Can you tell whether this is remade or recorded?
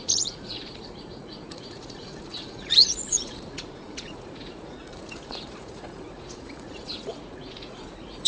remade